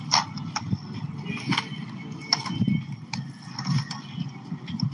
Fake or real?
fake